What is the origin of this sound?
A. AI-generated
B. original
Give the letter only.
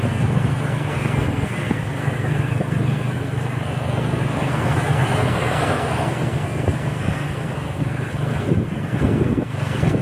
A